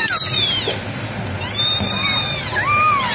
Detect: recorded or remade recorded